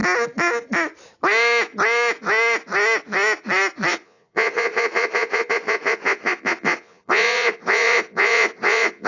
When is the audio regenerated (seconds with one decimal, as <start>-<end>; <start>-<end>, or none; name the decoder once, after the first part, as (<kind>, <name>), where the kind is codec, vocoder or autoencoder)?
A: 3.9-9.1 (vocoder, Vocos)